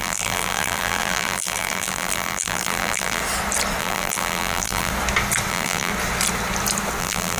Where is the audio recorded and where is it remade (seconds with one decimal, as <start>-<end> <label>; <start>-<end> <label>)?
0.0-3.2 remade; 3.2-3.8 recorded; 3.8-4.9 remade; 4.9-5.5 recorded; 5.5-5.9 remade; 5.9-7.0 recorded; 7.0-7.4 remade